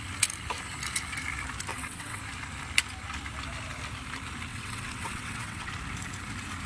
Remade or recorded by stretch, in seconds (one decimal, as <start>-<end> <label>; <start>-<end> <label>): 0.0-1.7 recorded; 1.7-2.2 remade; 2.2-4.5 recorded; 4.5-5.7 remade; 5.7-6.7 recorded